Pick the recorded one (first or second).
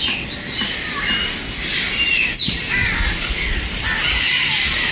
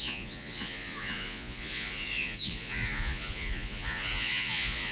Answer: first